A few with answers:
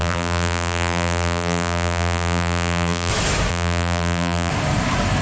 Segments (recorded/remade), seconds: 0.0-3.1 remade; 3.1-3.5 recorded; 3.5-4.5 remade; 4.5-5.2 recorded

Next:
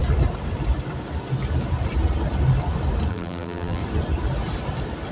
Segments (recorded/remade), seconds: 0.0-3.1 recorded; 3.1-3.8 remade; 3.8-5.1 recorded

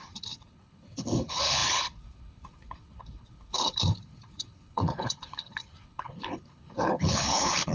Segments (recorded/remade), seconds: 0.0-7.7 remade

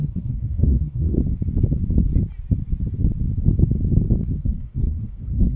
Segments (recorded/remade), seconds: 0.0-1.2 remade; 1.2-4.4 recorded; 4.4-5.6 remade